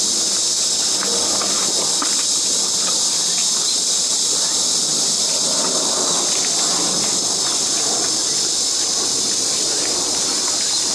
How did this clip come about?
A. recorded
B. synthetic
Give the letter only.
A